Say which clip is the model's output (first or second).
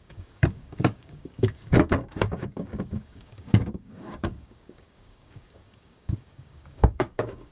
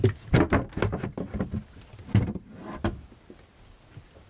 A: first